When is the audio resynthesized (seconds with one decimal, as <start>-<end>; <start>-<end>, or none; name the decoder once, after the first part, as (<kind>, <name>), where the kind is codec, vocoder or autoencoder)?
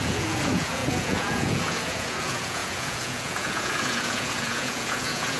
0.0-5.4 (vocoder, Vocos)